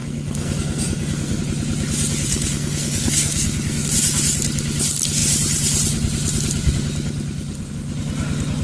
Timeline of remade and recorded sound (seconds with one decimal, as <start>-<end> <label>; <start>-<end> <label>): 0.0-1.4 remade; 1.4-2.3 recorded; 2.3-3.9 remade; 3.9-8.6 recorded